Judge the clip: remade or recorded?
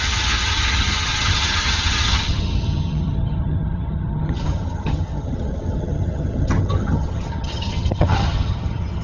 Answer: remade